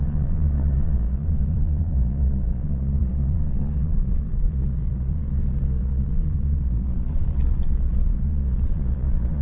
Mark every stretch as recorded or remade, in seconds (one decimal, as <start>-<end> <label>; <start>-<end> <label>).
0.0-9.4 remade